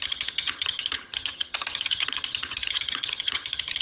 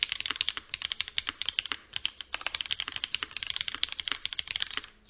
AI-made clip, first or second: first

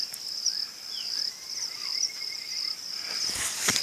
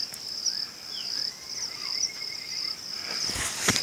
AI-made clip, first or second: first